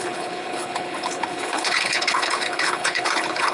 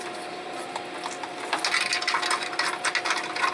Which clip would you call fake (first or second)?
first